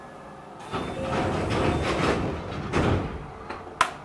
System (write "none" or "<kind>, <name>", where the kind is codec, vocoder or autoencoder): none